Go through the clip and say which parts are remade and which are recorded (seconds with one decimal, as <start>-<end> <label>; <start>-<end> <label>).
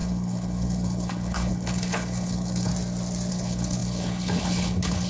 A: 0.0-2.7 remade; 2.7-3.3 recorded; 3.3-5.1 remade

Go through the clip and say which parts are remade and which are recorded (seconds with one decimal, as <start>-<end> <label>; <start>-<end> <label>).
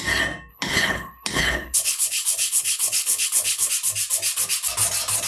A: 0.0-0.5 recorded; 0.5-3.7 remade; 3.7-5.3 recorded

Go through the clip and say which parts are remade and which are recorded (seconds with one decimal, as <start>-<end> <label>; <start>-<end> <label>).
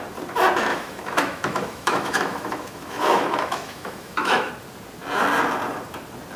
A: 0.0-0.7 recorded; 0.7-4.5 remade; 4.5-6.4 recorded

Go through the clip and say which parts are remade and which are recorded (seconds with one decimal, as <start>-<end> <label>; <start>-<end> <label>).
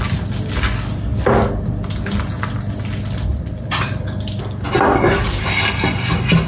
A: 0.0-3.3 recorded; 3.3-4.2 remade; 4.2-6.5 recorded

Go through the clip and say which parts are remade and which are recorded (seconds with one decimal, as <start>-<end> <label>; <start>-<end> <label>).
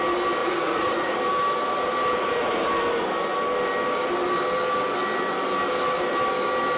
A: 0.0-0.4 recorded; 0.4-1.2 remade; 1.2-6.8 recorded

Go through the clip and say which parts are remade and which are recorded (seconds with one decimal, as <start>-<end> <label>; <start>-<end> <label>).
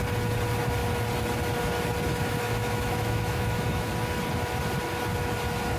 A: 0.0-2.1 recorded; 2.1-3.9 remade; 3.9-5.8 recorded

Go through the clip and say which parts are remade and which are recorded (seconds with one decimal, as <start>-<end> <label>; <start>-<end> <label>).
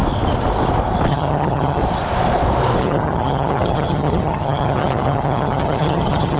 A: 0.0-1.1 recorded; 1.1-1.8 remade; 1.8-2.8 recorded; 2.8-6.4 remade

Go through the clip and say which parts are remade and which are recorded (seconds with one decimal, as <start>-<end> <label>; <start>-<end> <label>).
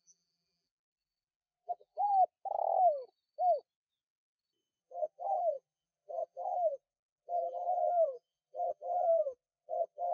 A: 0.0-2.1 remade; 2.1-4.8 recorded; 4.8-10.1 remade